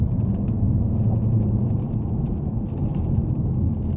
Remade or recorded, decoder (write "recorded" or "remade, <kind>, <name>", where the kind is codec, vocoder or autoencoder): remade, vocoder, BigVGAN v2